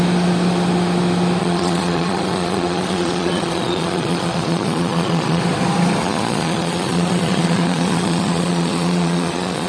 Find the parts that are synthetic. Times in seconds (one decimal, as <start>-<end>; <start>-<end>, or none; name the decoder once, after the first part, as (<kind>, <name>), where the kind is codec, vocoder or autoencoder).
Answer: 1.4-5.4 (vocoder, Vocos); 6.0-9.7